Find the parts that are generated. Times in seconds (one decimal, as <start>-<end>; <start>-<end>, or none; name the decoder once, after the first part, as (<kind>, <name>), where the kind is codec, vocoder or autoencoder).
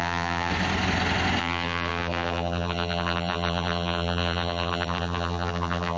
0.0-0.5 (vocoder, BigVGAN v2); 1.4-6.0